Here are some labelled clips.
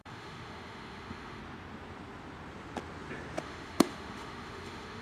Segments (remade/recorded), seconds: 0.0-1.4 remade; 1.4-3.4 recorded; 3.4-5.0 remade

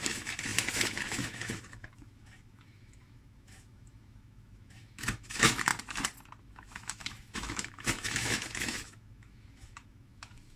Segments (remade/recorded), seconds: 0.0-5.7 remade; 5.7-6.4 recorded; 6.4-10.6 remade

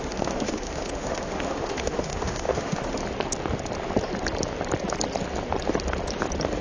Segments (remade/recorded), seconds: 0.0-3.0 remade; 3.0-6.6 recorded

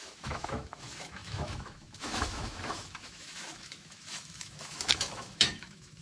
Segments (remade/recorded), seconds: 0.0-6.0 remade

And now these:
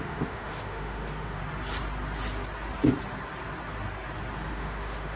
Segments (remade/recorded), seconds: 0.0-1.4 remade; 1.4-4.5 recorded; 4.5-5.2 remade

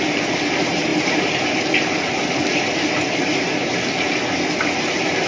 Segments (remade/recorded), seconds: 0.0-5.3 recorded